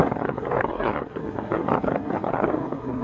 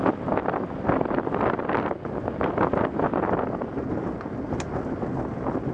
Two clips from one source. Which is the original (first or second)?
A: second